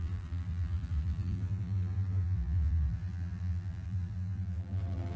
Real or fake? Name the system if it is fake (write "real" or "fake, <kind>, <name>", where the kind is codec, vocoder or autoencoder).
fake, vocoder, BigVGAN v2